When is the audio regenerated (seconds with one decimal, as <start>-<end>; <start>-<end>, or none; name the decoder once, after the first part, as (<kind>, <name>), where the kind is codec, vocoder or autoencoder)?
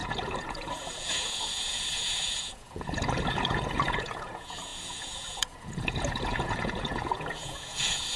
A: 0.0-8.2 (vocoder, Vocos)